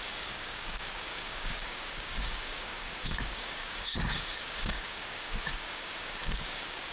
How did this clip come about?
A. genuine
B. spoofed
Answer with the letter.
B